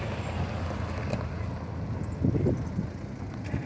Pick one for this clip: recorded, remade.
recorded